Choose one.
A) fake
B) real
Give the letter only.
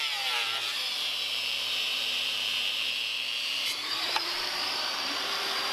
A